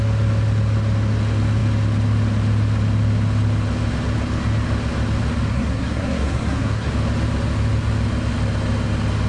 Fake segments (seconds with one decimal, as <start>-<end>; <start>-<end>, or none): 5.5-6.9